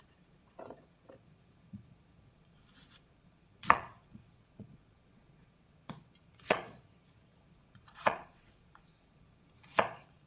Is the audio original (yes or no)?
no